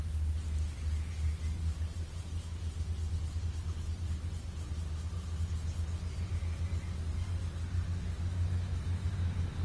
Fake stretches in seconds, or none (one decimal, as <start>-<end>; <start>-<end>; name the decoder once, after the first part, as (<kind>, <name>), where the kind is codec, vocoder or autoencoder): none